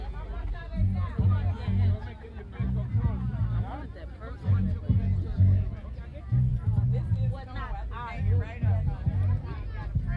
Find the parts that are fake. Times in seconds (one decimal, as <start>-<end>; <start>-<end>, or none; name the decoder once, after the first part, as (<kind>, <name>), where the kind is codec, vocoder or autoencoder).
6.5-7.6 (vocoder, BigVGAN v2)